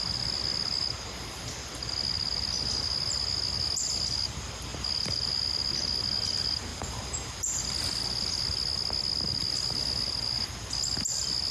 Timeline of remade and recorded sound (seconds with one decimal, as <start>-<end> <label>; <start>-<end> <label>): 0.0-11.5 recorded